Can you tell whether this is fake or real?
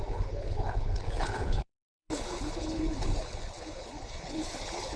fake